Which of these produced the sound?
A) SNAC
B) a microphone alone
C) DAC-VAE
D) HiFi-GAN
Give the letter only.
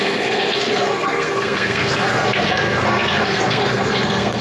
A